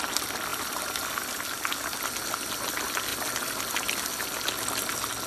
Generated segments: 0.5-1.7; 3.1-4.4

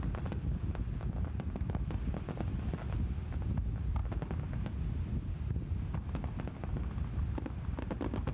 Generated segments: none

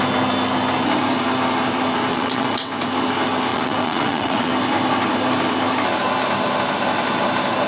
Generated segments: 2.1-2.7; 3.5-4.5